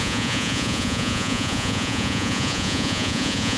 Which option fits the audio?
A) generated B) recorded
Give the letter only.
A